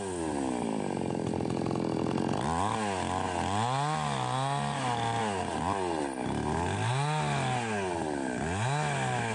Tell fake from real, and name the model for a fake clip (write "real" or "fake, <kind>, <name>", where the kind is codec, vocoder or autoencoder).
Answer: real